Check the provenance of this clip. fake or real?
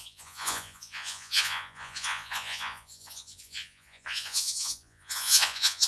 fake